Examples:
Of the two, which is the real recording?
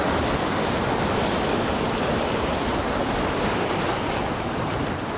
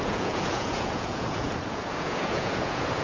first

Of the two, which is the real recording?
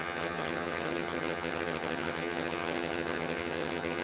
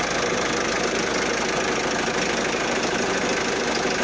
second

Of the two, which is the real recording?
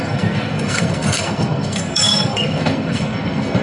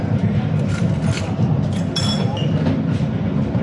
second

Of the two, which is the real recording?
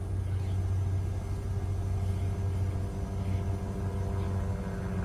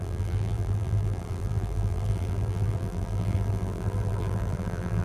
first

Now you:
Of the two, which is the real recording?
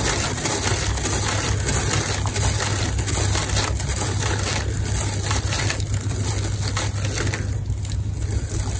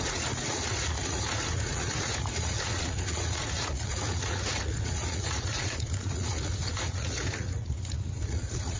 first